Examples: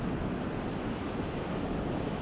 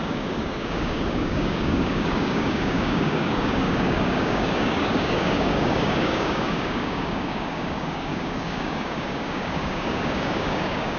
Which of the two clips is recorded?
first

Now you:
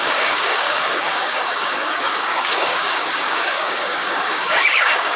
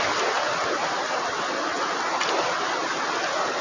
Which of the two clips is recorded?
second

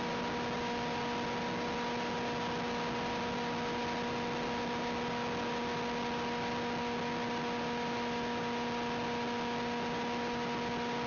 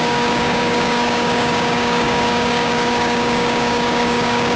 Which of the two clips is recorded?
first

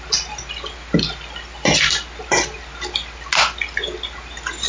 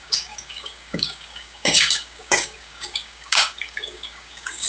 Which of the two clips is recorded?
first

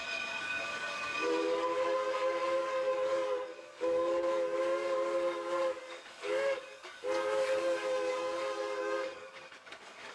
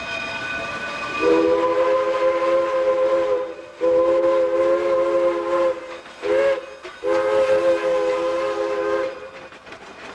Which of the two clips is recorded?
second